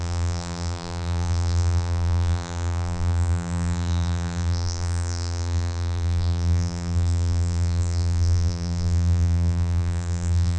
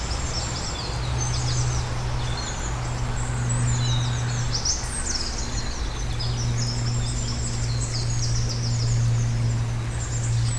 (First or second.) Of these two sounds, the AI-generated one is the first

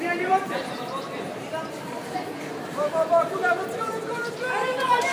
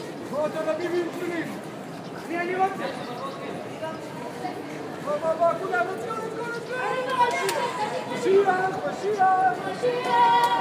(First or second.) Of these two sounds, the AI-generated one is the first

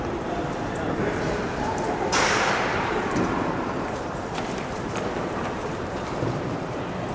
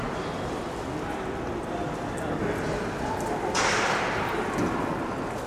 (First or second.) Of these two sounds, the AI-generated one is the first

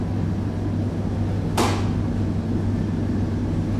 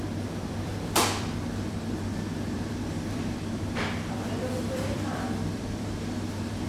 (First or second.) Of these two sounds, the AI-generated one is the second